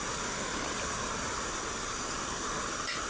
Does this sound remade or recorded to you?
recorded